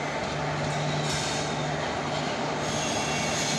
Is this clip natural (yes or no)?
yes